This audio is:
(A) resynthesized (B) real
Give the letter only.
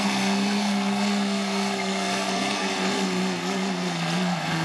A